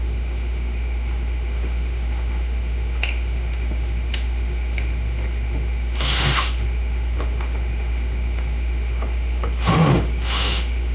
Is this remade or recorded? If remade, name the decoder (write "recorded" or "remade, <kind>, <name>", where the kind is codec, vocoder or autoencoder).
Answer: remade, autoencoder, DAC-VAE